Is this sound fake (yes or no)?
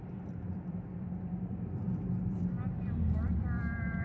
yes